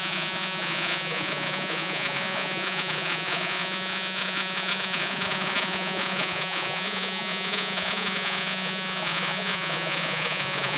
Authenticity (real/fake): fake